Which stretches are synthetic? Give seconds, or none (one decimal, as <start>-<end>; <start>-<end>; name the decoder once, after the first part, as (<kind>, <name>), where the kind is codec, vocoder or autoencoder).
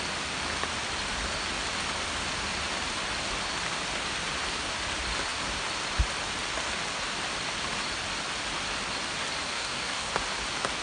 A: 9.5-10.1 (codec, DAC)